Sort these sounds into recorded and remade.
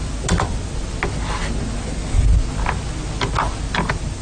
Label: recorded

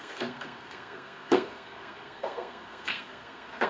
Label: remade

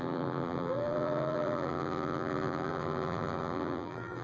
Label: remade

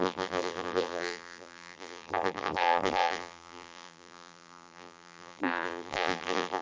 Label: remade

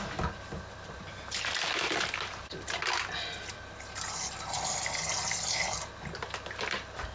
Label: recorded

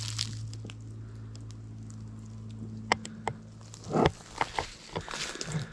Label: recorded